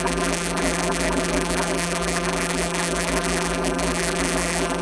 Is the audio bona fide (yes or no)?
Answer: no